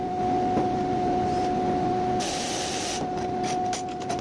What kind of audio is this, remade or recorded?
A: recorded